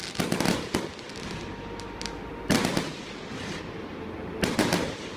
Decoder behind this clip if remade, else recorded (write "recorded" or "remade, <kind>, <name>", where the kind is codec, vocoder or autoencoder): recorded